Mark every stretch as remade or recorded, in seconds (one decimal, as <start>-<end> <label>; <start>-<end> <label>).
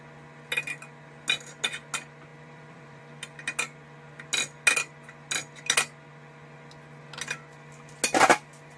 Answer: 0.0-2.3 recorded; 2.3-3.0 remade; 3.0-8.8 recorded